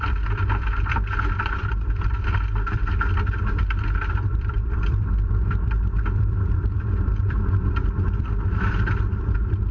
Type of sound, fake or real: fake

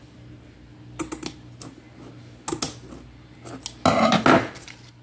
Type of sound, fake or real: real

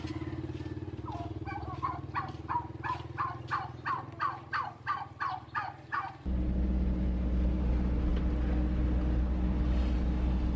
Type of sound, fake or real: real